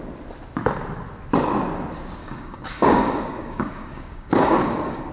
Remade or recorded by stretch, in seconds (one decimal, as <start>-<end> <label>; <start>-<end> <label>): 0.0-2.2 recorded; 2.2-5.1 remade